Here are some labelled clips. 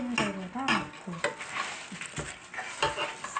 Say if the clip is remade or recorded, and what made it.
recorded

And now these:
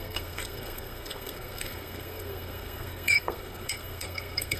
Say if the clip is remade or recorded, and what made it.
remade, codec, SNAC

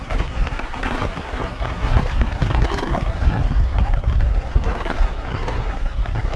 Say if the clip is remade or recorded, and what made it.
remade, codec, SNAC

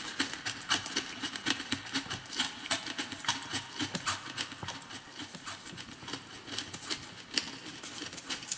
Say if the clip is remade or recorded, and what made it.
recorded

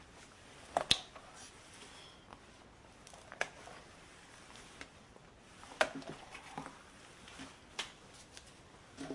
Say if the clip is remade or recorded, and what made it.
recorded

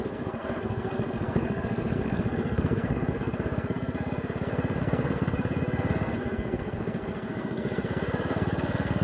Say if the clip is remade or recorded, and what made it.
remade, codec, SNAC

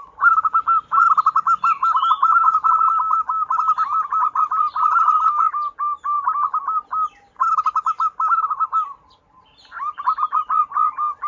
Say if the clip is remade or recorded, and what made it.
recorded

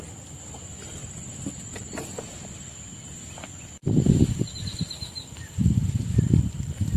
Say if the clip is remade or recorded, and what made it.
recorded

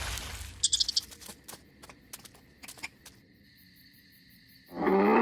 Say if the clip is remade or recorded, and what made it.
recorded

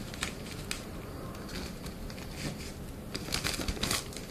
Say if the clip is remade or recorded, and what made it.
recorded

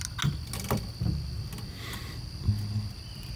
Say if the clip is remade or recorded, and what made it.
recorded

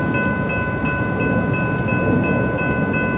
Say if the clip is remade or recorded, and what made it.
recorded